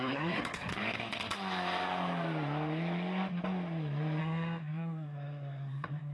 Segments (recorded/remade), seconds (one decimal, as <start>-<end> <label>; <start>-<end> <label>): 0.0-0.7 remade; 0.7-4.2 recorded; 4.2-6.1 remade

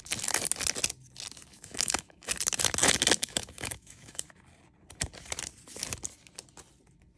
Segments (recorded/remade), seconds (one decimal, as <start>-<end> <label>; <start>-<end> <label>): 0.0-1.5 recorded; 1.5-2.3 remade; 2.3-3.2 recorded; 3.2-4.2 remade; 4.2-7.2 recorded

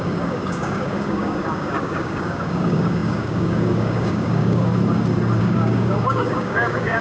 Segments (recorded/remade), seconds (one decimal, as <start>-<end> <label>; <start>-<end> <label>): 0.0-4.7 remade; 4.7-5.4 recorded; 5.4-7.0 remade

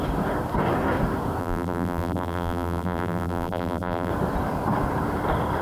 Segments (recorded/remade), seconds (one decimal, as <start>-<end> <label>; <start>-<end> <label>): 0.0-1.4 recorded; 1.4-4.1 remade; 4.1-5.6 recorded

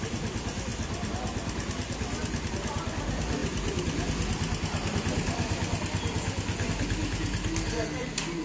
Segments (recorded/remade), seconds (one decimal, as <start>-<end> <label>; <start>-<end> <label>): 0.0-8.4 recorded

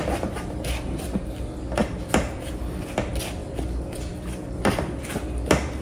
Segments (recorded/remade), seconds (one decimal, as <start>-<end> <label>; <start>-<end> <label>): 0.0-1.8 recorded; 1.8-2.5 remade; 2.5-3.4 recorded; 3.4-5.0 remade; 5.0-5.8 recorded

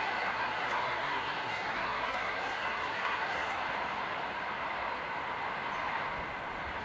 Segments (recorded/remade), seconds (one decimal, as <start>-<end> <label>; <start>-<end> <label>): 0.0-3.6 remade; 3.6-6.8 recorded